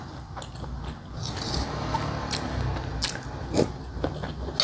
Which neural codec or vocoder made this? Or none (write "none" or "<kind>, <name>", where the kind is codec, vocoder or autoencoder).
none